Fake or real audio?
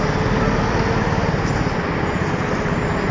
real